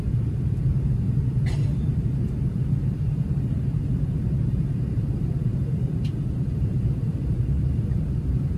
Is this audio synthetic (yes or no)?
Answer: yes